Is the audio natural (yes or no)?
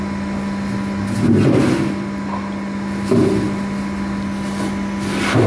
yes